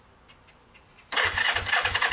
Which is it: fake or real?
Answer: real